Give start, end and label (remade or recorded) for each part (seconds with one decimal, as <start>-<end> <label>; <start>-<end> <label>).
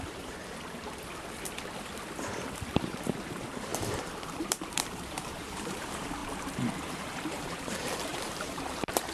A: 0.0-0.4 remade; 0.4-2.8 recorded; 2.8-3.7 remade; 3.7-4.2 recorded; 4.2-9.1 remade